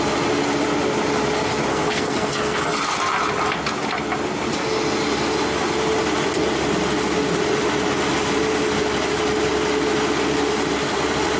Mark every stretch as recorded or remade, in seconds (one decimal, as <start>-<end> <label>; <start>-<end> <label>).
0.0-1.7 recorded; 1.7-2.6 remade; 2.6-11.4 recorded

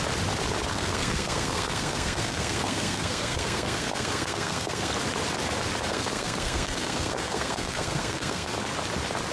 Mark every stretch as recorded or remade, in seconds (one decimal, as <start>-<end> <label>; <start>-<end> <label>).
0.0-0.7 recorded; 0.7-4.9 remade; 4.9-5.9 recorded; 5.9-8.5 remade; 8.5-9.3 recorded